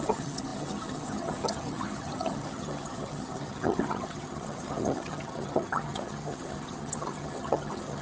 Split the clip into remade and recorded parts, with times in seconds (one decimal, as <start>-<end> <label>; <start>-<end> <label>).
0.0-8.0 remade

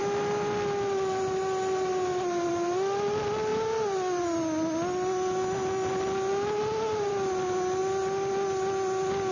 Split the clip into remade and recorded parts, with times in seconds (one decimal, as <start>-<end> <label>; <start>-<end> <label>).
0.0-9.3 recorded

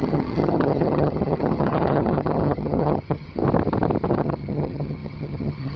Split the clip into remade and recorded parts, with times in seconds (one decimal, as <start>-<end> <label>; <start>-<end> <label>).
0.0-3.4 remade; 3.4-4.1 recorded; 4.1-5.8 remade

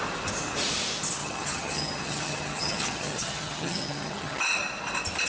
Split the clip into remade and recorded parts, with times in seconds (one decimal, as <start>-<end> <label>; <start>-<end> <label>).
0.0-1.2 recorded; 1.2-4.4 remade; 4.4-5.3 recorded

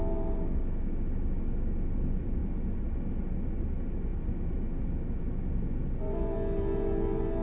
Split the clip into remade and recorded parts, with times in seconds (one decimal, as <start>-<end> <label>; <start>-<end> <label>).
0.0-7.4 recorded

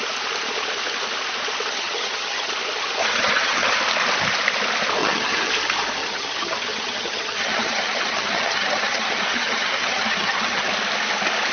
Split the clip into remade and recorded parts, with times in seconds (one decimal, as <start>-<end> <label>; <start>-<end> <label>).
0.0-1.7 recorded; 1.7-2.5 remade; 2.5-3.0 recorded; 3.0-3.8 remade; 3.8-5.0 recorded; 5.0-5.5 remade; 5.5-6.0 recorded; 6.0-10.7 remade; 10.7-11.5 recorded

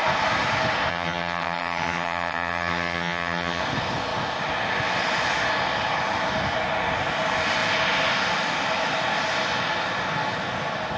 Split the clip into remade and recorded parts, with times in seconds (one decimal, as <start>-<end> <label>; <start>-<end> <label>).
0.0-0.9 recorded; 0.9-3.6 remade; 3.6-11.0 recorded

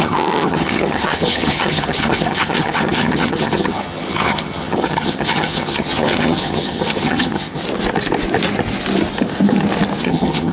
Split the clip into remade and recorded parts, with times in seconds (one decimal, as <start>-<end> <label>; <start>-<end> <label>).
0.0-7.6 remade; 7.6-10.0 recorded; 10.0-10.5 remade